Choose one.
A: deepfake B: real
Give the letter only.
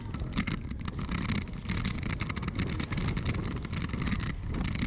B